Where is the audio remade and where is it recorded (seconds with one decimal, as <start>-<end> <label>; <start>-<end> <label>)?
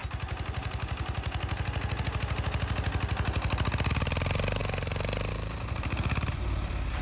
0.0-3.9 recorded; 3.9-7.0 remade